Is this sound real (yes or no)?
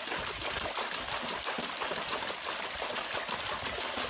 yes